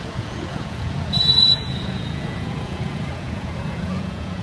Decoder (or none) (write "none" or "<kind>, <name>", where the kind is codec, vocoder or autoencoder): vocoder, Vocos